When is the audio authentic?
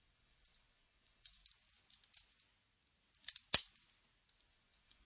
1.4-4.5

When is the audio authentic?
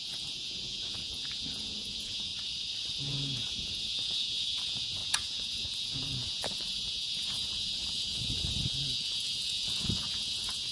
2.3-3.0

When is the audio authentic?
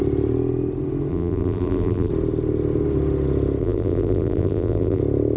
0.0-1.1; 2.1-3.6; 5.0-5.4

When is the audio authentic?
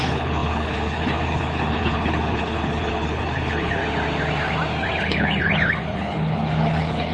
3.8-5.0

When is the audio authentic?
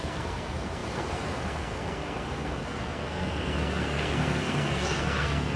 none